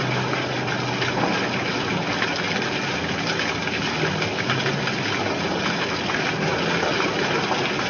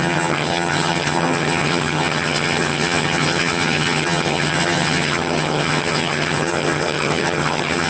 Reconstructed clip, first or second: second